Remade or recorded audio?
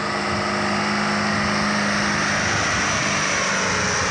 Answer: recorded